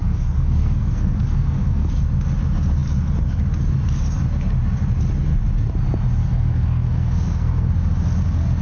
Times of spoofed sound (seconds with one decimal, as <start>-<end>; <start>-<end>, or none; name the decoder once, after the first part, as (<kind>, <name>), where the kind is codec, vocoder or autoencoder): 0.0-1.9 (codec, SNAC); 6.2-7.7